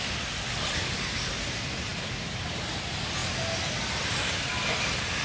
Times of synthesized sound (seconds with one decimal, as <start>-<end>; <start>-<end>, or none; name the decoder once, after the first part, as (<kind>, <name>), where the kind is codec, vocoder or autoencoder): none